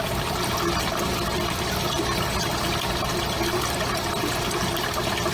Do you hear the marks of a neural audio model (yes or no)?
no